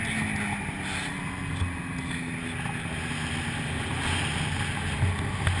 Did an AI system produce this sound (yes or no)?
no